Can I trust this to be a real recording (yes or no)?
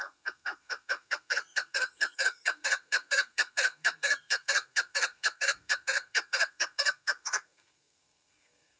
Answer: no